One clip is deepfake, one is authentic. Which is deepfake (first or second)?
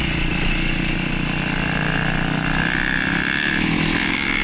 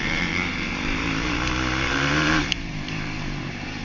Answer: second